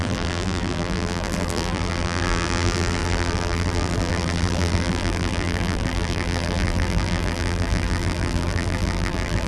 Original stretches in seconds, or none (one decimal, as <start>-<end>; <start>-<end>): none